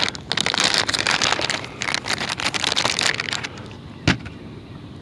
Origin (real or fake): real